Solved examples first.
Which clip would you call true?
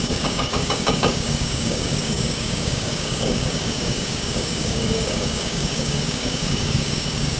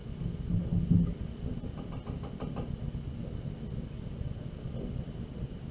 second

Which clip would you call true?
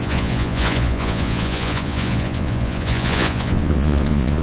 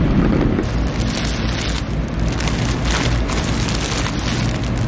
second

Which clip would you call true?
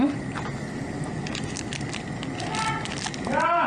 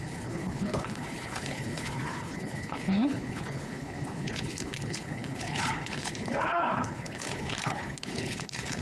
first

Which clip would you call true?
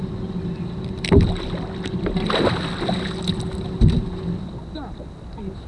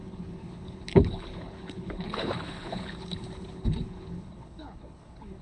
first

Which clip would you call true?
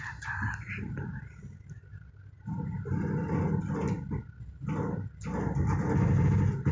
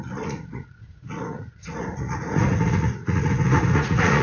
first